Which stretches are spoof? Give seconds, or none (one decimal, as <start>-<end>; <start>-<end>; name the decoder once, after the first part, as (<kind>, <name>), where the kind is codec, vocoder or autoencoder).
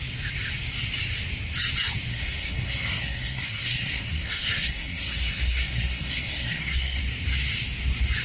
2.1-7.0 (codec, SNAC)